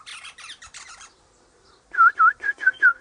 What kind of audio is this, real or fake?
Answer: fake